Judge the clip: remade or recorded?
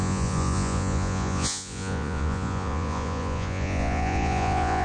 remade